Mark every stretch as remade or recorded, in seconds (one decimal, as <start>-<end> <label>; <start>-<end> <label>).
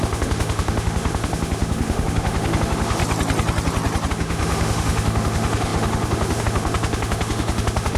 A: 0.0-3.0 remade; 3.0-4.1 recorded; 4.1-8.0 remade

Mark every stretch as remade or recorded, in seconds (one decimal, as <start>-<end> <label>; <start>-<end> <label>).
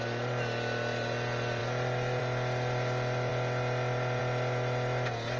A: 0.0-5.4 recorded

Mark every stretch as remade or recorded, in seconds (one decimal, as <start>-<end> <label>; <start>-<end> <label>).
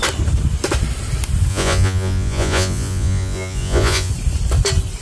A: 0.0-1.5 recorded; 1.5-4.1 remade; 4.1-5.0 recorded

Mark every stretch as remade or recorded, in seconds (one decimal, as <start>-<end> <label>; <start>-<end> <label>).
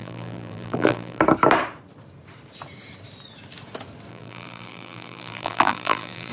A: 0.0-1.2 remade; 1.2-4.1 recorded; 4.1-6.3 remade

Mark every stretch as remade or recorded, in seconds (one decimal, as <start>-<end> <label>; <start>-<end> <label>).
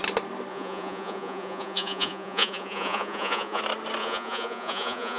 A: 0.0-0.5 recorded; 0.5-3.6 remade; 3.6-4.0 recorded; 4.0-5.2 remade